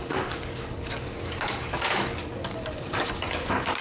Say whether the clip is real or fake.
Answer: fake